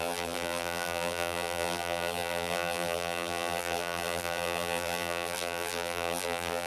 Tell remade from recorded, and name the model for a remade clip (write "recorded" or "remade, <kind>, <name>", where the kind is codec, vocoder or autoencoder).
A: remade, vocoder, BigVGAN v2